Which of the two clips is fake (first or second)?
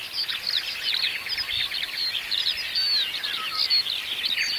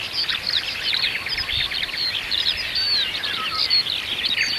second